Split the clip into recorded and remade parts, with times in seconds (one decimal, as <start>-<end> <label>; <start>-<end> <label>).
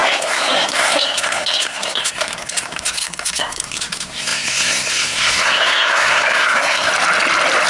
0.0-6.9 remade; 6.9-7.7 recorded